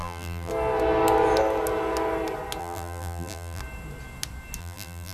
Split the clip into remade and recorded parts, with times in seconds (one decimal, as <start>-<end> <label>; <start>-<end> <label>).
0.0-0.5 remade; 0.5-2.6 recorded; 2.6-3.6 remade; 3.6-4.6 recorded; 4.6-5.1 remade